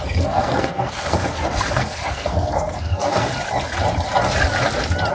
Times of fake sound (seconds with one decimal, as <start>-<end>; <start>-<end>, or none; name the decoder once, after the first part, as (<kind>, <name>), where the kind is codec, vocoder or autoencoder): 0.0-3.3 (codec, SNAC)